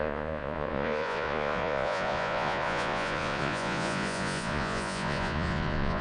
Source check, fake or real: fake